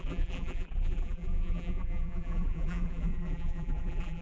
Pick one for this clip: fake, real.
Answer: fake